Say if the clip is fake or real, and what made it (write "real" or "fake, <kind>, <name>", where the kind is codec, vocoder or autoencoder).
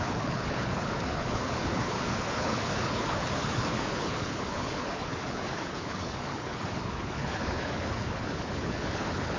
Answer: fake, codec, HILCodec